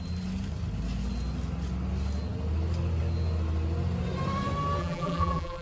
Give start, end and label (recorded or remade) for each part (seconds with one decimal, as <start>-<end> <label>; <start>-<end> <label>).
0.0-4.8 recorded; 4.8-5.6 remade